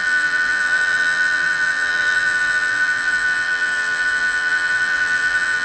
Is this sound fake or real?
fake